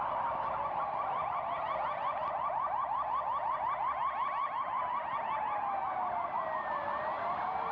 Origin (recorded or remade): recorded